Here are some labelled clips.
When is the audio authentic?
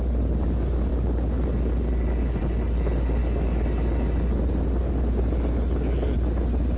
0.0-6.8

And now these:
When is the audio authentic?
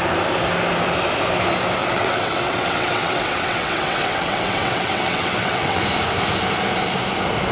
0.0-1.8; 5.8-7.5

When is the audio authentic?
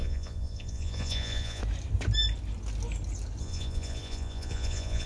1.6-3.4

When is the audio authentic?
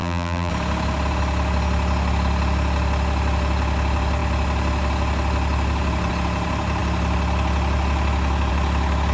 0.5-9.1